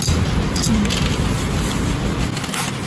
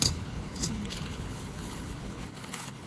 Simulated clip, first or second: second